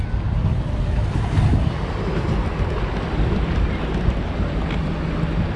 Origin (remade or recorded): recorded